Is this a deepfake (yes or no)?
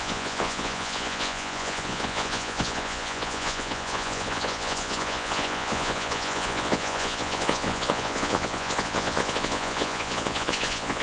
yes